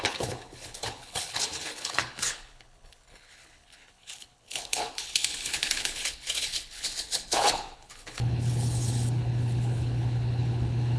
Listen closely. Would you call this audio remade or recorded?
remade